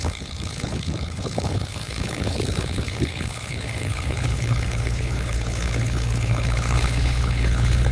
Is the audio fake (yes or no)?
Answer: yes